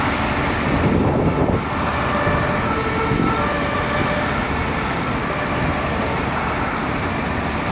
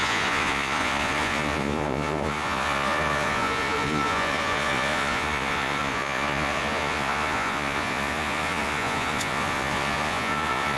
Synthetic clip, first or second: second